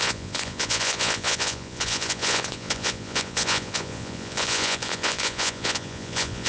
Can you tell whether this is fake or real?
fake